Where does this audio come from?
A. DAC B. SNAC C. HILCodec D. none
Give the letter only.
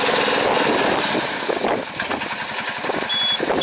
D